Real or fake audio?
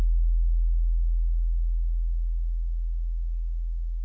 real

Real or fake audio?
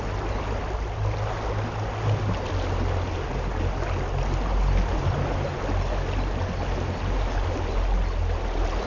real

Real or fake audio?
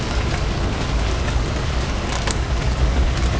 fake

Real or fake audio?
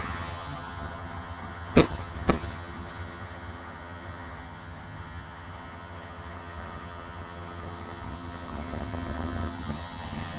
fake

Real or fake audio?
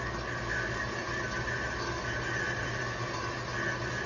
real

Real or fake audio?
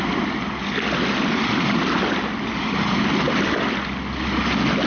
real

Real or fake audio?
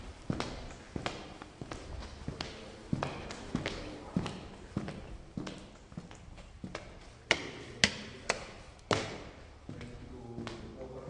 real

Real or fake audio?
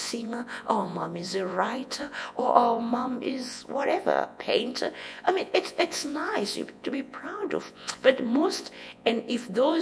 fake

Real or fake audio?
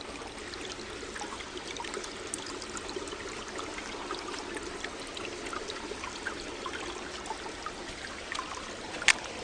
real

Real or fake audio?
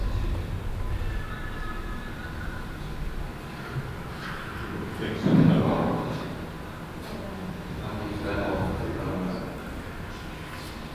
real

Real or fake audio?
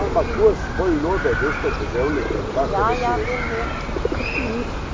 real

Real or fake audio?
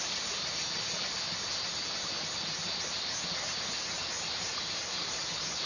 real